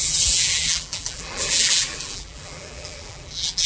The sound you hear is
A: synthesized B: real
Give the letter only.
A